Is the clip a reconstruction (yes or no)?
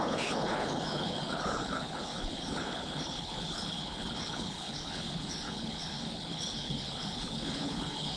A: yes